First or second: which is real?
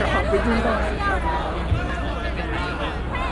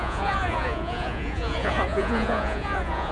first